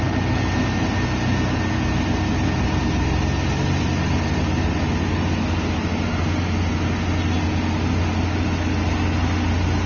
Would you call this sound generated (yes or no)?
no